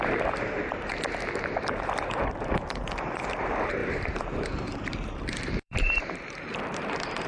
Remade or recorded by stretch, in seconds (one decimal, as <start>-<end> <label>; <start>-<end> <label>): 0.0-0.9 remade; 0.9-1.6 recorded; 1.6-7.3 remade